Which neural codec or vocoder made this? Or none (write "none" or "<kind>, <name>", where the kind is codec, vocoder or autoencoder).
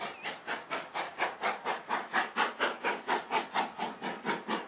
none